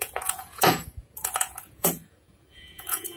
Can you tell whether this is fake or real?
fake